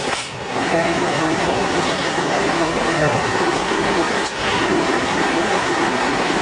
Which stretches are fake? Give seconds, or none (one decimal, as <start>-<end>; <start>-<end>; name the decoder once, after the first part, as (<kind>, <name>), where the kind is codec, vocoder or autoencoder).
0.0-6.4 (codec, SNAC)